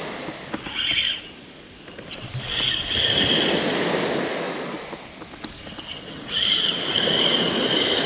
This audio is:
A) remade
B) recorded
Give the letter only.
B